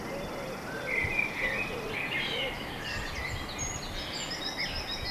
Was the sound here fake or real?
real